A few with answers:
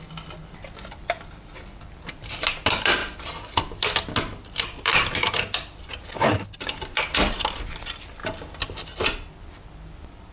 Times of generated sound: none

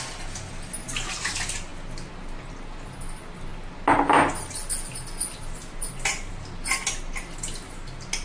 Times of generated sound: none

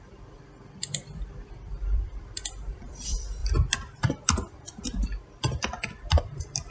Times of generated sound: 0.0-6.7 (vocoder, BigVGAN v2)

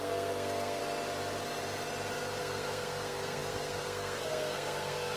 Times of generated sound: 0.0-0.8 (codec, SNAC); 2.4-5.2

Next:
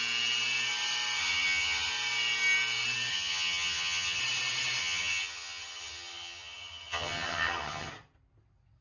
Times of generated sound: 1.2-1.9 (vocoder, HiFi-GAN); 3.1-4.2; 4.8-7.9

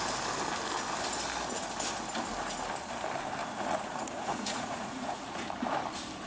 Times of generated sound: 3.4-5.5 (vocoder, Vocos)

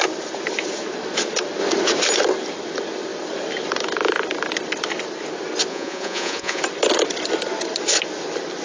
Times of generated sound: 5.7-6.6 (vocoder, Vocos)